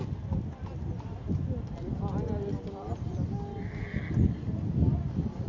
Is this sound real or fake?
real